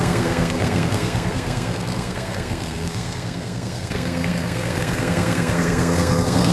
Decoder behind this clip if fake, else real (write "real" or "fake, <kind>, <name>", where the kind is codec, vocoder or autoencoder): fake, codec, SNAC